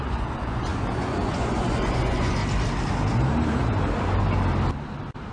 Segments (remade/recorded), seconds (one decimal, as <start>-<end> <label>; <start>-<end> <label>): 0.0-2.4 remade; 2.4-5.3 recorded